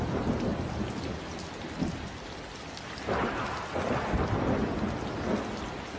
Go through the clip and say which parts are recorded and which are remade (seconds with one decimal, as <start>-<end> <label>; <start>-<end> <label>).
0.0-6.0 recorded

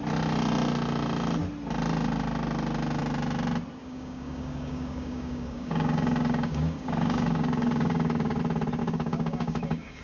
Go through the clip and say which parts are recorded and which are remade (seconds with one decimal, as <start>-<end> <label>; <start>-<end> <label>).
0.0-3.8 recorded; 3.8-8.4 remade; 8.4-8.8 recorded; 8.8-10.0 remade

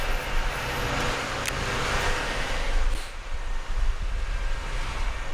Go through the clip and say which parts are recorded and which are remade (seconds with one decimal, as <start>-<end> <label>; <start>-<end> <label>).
0.0-1.8 recorded; 1.8-5.3 remade